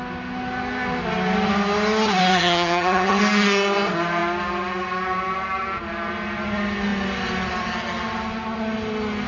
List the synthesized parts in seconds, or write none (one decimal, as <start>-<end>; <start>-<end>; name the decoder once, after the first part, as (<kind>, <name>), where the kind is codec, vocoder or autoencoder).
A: 2.3-3.2 (vocoder, HiFi-GAN)

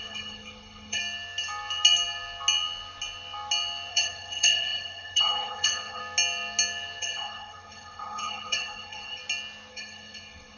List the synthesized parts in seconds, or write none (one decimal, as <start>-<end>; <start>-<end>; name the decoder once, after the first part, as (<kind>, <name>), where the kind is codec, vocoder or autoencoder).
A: 0.0-1.0 (codec, HILCodec); 3.9-6.0; 7.0-9.2; 9.7-10.6

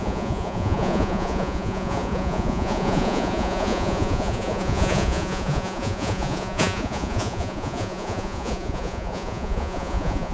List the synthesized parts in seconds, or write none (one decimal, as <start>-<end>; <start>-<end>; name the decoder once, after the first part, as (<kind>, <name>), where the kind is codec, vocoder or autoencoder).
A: 0.0-10.3 (vocoder, Vocos)

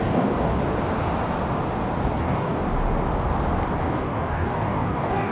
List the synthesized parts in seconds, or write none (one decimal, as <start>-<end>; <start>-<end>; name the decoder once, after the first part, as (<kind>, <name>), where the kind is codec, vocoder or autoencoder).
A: 0.0-0.6 (codec, DAC); 2.2-2.6; 3.8-5.3

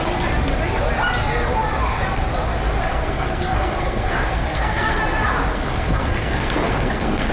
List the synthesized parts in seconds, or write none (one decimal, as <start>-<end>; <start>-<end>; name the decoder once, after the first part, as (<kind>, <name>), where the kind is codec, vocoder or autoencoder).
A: 2.9-5.0 (codec, SNAC); 5.5-7.3

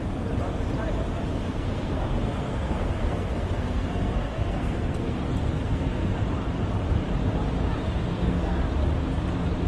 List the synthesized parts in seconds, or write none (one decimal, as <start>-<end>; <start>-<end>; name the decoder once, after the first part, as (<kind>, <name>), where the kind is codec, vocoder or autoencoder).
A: 1.3-6.1 (codec, SNAC); 8.1-8.6

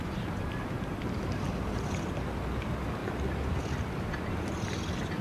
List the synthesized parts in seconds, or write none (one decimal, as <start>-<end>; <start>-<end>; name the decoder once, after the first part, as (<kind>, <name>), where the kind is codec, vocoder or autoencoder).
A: none